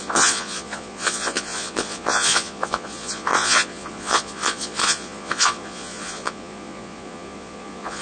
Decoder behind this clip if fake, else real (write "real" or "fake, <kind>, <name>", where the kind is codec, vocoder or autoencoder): fake, vocoder, Vocos